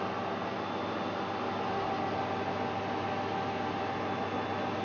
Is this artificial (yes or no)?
no